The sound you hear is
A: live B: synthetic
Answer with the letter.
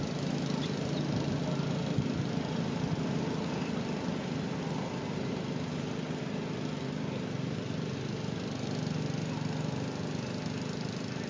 A